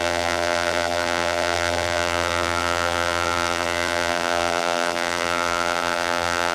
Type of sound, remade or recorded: remade